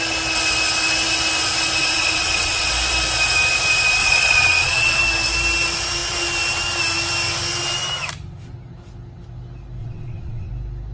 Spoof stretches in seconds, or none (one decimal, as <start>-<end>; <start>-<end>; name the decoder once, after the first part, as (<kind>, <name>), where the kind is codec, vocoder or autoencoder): 1.8-2.7 (vocoder, WaveNeXt); 4.0-5.0; 9.8-10.5